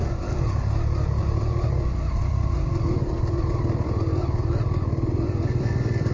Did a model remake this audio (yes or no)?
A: yes